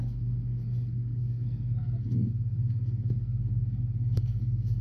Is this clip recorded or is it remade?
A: remade